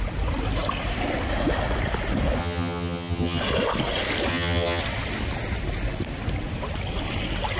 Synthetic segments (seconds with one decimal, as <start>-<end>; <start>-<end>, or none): 2.4-3.4; 4.3-4.8